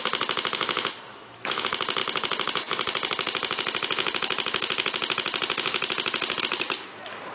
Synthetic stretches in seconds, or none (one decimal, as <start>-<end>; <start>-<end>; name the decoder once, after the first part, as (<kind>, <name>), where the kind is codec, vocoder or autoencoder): 1.1-1.6 (autoencoder, DAC-VAE)